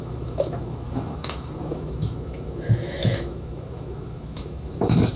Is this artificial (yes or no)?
yes